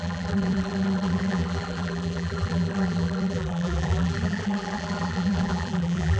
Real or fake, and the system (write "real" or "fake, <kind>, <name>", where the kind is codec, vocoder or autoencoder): fake, vocoder, BigVGAN v2